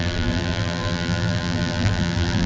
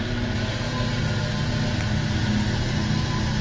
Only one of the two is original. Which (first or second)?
second